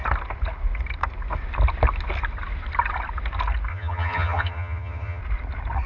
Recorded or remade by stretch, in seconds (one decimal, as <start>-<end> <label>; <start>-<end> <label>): 0.0-3.7 recorded; 3.7-5.2 remade; 5.2-5.9 recorded